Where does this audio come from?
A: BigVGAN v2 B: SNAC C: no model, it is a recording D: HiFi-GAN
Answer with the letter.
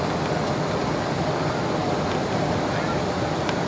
C